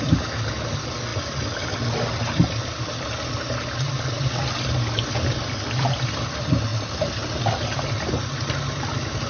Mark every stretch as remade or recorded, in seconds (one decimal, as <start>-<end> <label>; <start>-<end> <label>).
0.0-9.3 recorded